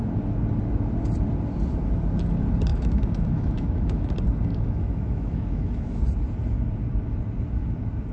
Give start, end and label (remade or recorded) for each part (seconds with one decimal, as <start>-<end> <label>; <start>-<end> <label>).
0.0-2.7 recorded; 2.7-4.0 remade; 4.0-4.5 recorded; 4.5-6.0 remade; 6.0-8.1 recorded